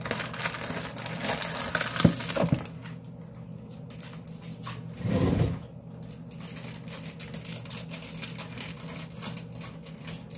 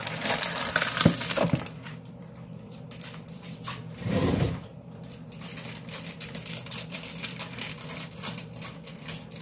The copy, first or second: second